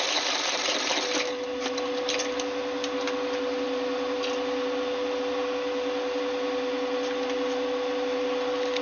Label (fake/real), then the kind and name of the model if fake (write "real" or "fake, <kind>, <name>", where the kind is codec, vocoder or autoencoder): real